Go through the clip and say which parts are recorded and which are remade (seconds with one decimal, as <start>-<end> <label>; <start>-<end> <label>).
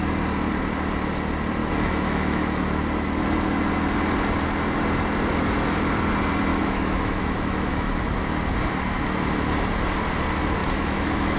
0.0-1.6 recorded; 1.6-2.8 remade; 2.8-6.5 recorded; 6.5-8.1 remade; 8.1-10.6 recorded; 10.6-11.4 remade